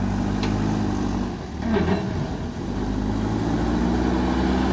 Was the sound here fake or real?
real